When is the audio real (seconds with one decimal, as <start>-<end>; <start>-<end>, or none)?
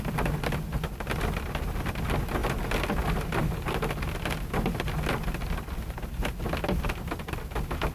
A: 0.0-7.9